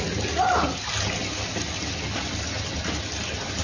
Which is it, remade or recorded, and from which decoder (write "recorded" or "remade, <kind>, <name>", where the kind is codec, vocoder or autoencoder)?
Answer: recorded